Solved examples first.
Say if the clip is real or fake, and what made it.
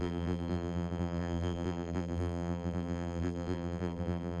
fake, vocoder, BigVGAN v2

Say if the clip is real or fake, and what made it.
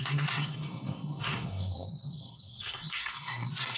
fake, codec, SNAC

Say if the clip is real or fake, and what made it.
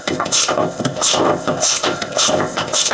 fake, codec, ZipCodec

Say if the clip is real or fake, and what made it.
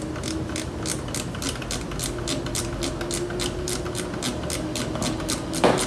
real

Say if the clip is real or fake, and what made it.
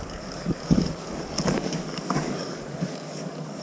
fake, codec, DAC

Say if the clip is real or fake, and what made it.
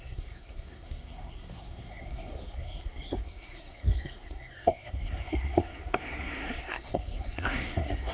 fake, codec, SNAC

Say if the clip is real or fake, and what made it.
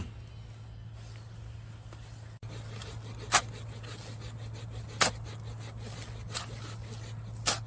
real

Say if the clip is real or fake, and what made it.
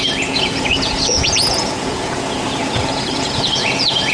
fake, vocoder, Vocos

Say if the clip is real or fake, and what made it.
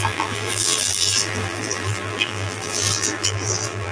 fake, vocoder, BigVGAN v2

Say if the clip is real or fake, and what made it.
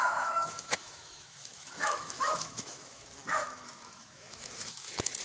fake, autoencoder, DAC-VAE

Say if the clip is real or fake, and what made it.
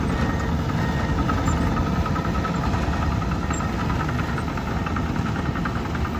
real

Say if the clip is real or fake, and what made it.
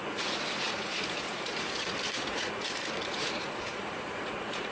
fake, vocoder, Vocos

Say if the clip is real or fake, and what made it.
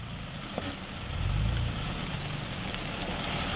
real